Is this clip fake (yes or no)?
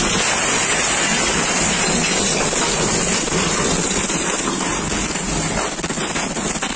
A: no